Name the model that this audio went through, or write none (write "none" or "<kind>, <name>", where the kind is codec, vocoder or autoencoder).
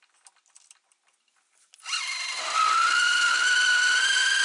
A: none